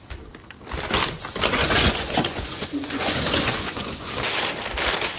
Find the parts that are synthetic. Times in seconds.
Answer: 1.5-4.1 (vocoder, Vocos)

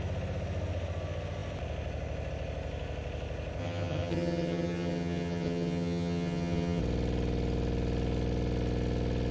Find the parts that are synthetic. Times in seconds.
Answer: 3.6-6.8 (vocoder, HiFi-GAN)

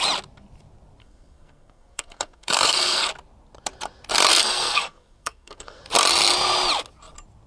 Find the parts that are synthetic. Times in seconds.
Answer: 1.0-3.1 (codec, SNAC); 4.3-5.8